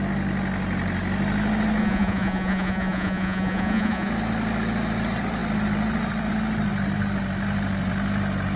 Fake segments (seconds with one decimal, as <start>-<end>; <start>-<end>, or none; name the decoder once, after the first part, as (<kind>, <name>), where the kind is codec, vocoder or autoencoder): 1.8-4.1 (vocoder, Vocos)